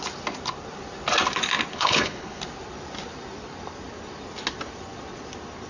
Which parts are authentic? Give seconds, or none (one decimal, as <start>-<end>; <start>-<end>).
0.0-1.7; 2.4-5.7